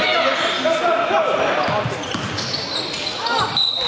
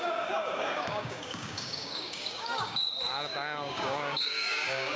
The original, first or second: first